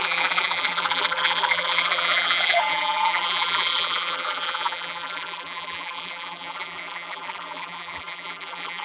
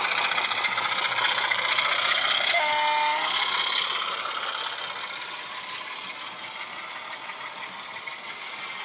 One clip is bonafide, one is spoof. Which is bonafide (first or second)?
second